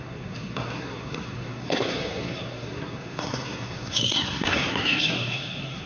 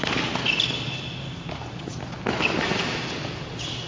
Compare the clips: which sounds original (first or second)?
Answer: second